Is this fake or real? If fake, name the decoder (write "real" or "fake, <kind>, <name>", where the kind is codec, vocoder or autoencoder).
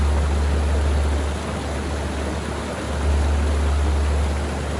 real